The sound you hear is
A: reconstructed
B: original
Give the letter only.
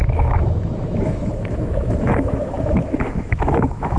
A